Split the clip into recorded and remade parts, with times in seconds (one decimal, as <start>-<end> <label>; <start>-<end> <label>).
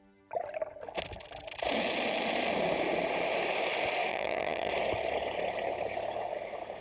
0.0-4.1 recorded; 4.1-4.7 remade; 4.7-6.8 recorded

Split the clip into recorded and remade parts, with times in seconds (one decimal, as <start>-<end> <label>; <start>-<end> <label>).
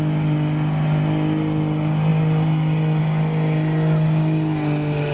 0.0-5.1 recorded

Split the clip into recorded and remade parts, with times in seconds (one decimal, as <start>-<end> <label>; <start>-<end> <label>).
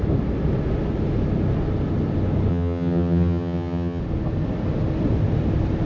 0.0-2.5 recorded; 2.5-4.0 remade; 4.0-5.8 recorded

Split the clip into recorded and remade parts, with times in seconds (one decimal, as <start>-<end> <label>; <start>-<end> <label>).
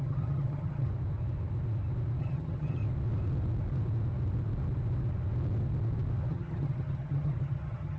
0.0-0.9 remade; 0.9-2.2 recorded; 2.2-2.8 remade; 2.8-6.3 recorded; 6.3-8.0 remade